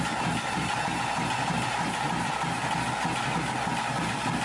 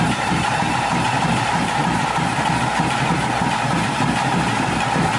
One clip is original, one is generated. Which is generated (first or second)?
second